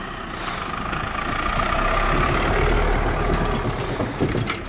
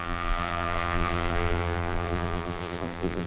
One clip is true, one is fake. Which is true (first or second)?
first